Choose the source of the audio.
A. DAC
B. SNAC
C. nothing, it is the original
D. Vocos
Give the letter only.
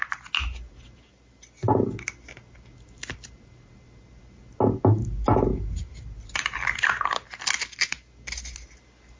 C